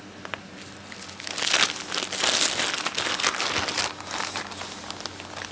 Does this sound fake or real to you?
real